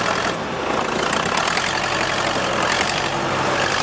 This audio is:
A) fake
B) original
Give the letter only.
B